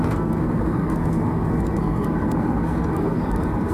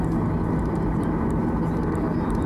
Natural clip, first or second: second